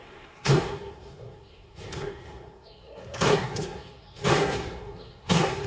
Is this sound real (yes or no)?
no